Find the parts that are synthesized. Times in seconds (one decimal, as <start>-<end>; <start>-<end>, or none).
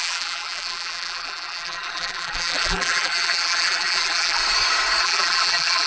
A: 0.0-4.4; 5.0-5.9